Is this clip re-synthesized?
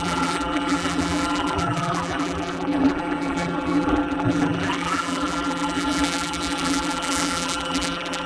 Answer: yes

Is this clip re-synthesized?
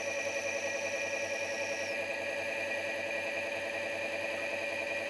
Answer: no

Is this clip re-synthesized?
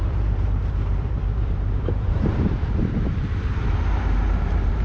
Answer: yes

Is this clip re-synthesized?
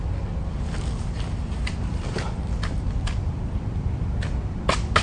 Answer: no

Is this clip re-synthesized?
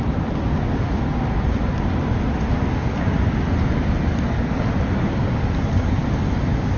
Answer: no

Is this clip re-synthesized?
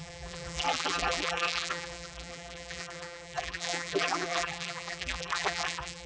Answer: yes